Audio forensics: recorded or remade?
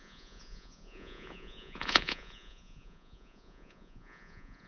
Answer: remade